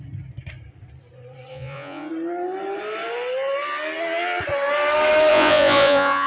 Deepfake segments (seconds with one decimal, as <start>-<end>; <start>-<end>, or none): 1.5-2.1; 5.3-6.3